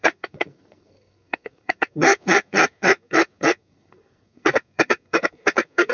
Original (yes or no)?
no